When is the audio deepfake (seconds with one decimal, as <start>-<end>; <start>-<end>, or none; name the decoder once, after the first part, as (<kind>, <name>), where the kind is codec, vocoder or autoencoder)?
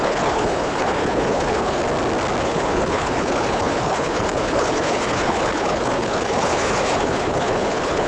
0.0-1.8 (codec, HILCodec); 2.4-8.1